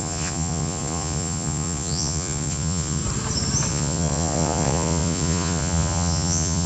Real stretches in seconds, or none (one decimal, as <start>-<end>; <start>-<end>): 3.0-3.7